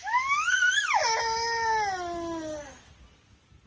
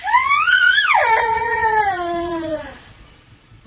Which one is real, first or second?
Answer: first